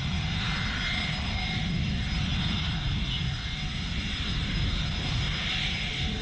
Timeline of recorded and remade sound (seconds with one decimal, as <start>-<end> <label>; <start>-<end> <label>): 0.0-6.2 recorded